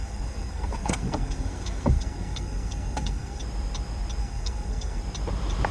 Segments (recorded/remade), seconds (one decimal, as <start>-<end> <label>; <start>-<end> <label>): 0.0-3.4 remade; 3.4-4.2 recorded; 4.2-5.0 remade; 5.0-5.7 recorded